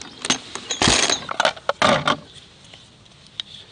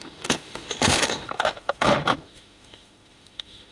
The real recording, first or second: first